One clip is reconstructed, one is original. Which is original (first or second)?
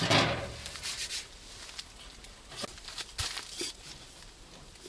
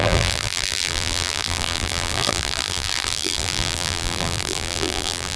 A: first